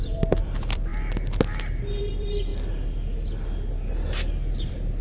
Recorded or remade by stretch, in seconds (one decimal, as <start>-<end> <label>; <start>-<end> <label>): 0.0-0.9 remade; 0.9-2.0 recorded; 2.0-2.5 remade; 2.5-5.0 recorded